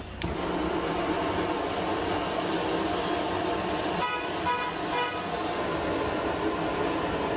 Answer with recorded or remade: recorded